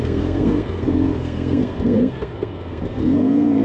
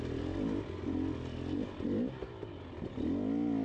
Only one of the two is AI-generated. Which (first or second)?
first